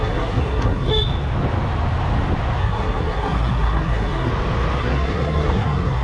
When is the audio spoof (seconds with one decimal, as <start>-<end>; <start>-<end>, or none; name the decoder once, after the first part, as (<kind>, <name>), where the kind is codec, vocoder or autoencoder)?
0.0-0.9 (codec, SNAC); 2.6-4.3; 4.8-6.0